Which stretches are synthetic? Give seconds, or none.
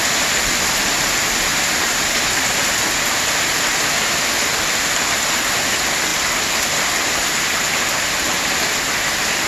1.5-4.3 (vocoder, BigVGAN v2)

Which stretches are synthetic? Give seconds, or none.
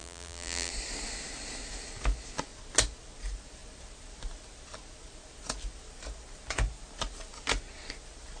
0.0-0.7 (vocoder, BigVGAN v2)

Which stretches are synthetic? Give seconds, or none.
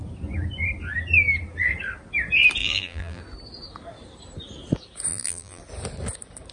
2.6-3.2 (vocoder, BigVGAN v2); 5.1-5.6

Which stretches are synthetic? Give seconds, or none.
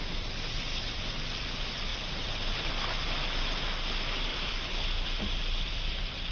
1.9-2.7 (vocoder, BigVGAN v2); 4.3-5.7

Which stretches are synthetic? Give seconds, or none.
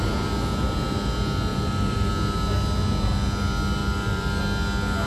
1.5-2.1 (vocoder, BigVGAN v2); 3.8-4.4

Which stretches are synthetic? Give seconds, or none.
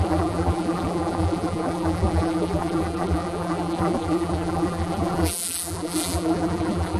0.0-7.0 (vocoder, BigVGAN v2)